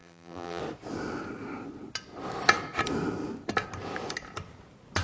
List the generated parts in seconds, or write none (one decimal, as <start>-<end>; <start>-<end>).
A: 0.0-0.6